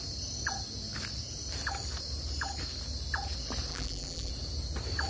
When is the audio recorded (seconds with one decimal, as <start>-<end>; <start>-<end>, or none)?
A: 0.0-3.7; 4.3-5.1